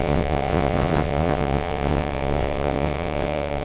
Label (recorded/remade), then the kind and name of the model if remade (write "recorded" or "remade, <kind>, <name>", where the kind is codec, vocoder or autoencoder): remade, vocoder, WaveNeXt